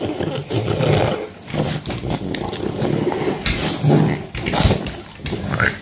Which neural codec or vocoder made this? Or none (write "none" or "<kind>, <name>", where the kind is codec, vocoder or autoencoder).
none